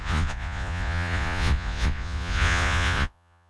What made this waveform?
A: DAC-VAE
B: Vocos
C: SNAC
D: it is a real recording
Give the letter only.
B